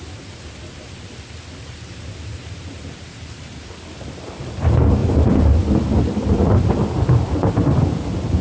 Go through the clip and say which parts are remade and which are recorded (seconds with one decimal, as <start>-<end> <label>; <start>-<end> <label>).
0.0-5.0 recorded; 5.0-6.7 remade; 6.7-8.4 recorded